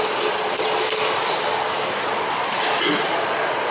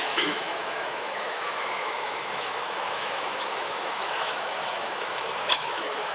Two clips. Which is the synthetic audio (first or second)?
second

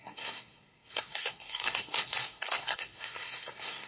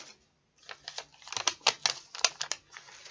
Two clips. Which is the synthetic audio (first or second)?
first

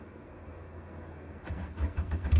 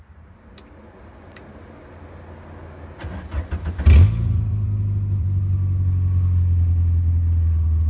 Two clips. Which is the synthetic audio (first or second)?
first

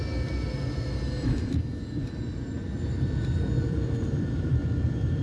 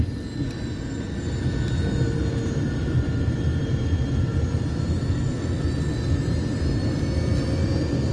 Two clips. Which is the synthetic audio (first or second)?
first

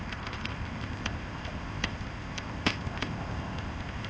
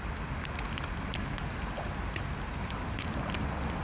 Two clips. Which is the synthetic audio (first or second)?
first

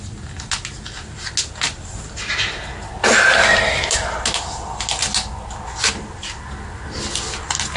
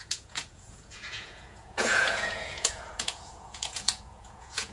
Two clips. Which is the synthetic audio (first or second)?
second